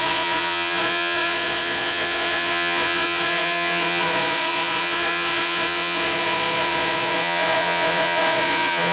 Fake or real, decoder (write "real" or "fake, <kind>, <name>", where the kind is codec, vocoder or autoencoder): fake, vocoder, Vocos